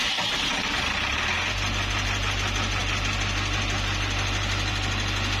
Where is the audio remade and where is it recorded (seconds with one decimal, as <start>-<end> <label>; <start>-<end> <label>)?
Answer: 0.0-5.4 recorded